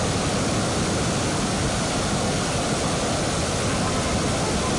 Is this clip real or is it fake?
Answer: real